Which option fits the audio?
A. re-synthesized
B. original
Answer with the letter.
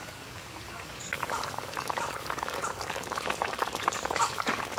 A